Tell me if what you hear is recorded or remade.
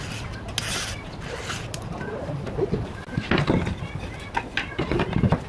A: recorded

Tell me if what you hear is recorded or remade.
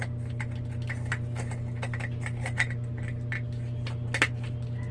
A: recorded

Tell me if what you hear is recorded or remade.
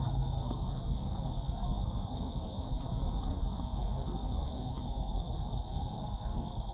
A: remade